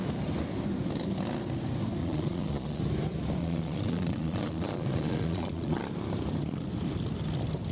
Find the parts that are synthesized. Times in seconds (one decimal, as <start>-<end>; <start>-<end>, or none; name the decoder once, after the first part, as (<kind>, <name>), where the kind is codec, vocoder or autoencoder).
2.0-2.8 (vocoder, Vocos); 3.4-5.8